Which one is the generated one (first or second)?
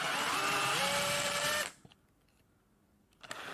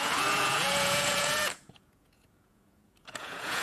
second